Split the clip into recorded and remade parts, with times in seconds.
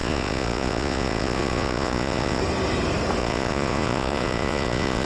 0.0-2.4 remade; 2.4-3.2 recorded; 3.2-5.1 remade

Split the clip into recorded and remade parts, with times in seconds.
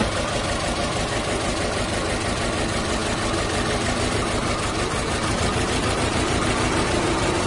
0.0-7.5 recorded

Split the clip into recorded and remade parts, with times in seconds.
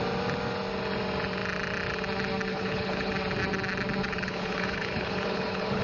0.0-2.5 recorded; 2.5-3.1 remade; 3.1-4.0 recorded; 4.0-5.8 remade